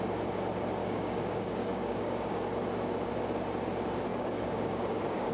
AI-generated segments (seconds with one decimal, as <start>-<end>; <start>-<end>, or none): 0.8-2.5; 4.1-5.3